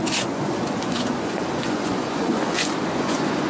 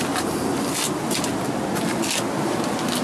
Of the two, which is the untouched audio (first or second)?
second